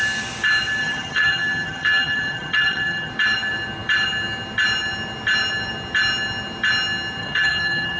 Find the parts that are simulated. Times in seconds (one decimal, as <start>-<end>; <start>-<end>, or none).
0.8-3.1; 7.2-8.0